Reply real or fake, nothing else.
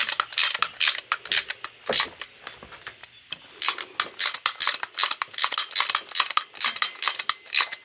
real